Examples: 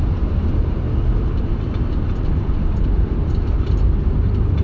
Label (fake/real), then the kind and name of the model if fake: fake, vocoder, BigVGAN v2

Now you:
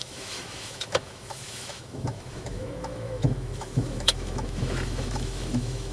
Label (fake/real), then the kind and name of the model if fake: fake, autoencoder, DAC-VAE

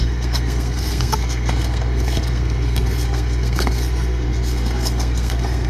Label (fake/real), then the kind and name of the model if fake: fake, codec, SNAC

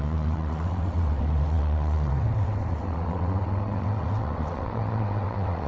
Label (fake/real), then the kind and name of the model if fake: fake, vocoder, WaveNeXt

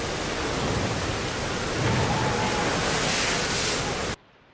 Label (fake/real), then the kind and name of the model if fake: real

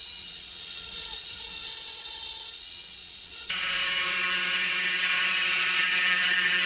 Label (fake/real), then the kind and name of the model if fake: fake, vocoder, WaveNeXt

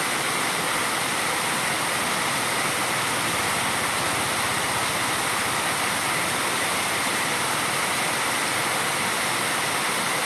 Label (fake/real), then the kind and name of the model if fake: real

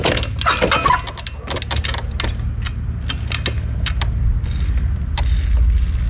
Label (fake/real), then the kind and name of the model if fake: real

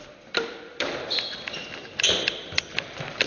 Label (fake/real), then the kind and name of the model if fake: real